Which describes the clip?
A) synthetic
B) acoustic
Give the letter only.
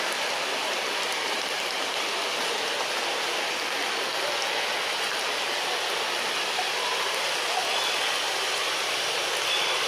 B